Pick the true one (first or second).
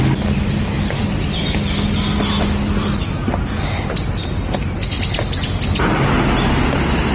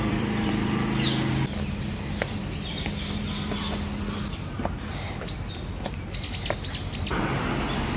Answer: first